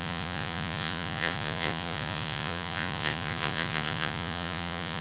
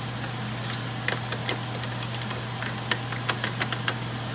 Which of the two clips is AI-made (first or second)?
first